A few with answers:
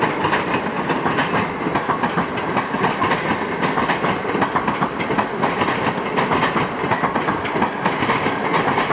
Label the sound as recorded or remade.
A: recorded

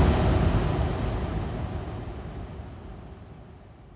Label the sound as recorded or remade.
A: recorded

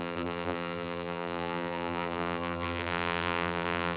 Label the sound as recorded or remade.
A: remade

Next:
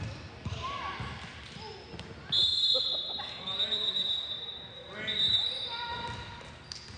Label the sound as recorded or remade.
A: recorded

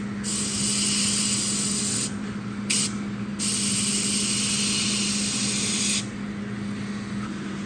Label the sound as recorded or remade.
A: recorded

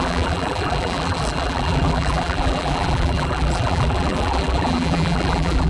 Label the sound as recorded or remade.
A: remade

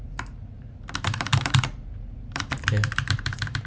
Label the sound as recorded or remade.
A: remade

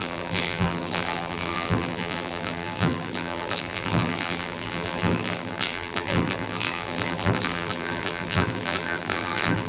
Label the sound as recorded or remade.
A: remade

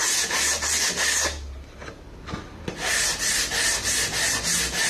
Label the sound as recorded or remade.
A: recorded